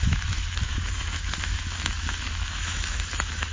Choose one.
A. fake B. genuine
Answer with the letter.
A